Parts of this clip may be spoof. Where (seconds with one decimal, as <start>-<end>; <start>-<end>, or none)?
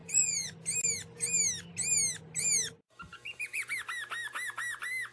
0.0-0.5; 3.1-3.7